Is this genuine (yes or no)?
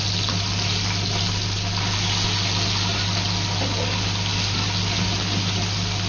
yes